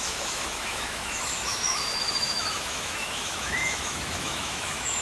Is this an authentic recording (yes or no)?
no